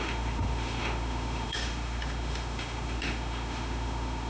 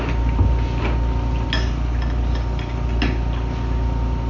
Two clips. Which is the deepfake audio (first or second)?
first